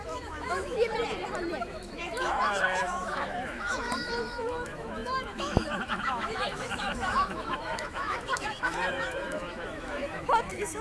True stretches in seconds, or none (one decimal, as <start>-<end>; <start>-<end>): 0.9-1.6

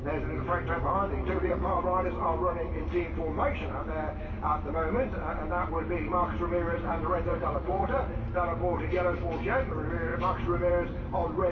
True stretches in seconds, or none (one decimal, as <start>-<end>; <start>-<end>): 0.0-1.2; 1.8-7.3; 8.1-11.5

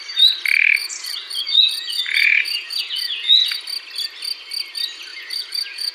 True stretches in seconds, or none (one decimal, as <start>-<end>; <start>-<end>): 0.0-0.8; 3.6-5.1

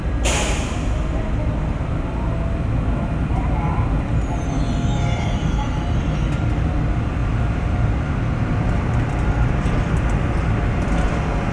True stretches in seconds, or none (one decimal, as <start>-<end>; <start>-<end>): 0.0-7.2; 8.9-11.5

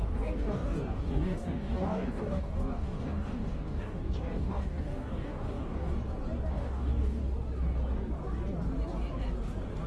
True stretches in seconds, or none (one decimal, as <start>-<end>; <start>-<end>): 6.0-6.5; 7.2-9.9

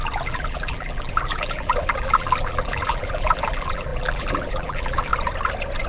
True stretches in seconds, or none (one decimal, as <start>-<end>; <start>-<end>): 5.1-5.9

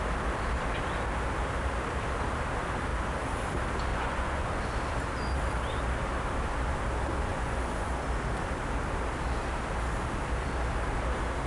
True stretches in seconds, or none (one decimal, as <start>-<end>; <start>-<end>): 0.0-3.9; 4.6-7.3; 7.9-11.5

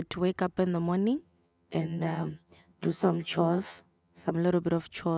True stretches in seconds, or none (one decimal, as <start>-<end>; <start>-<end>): 0.0-1.2; 4.3-5.2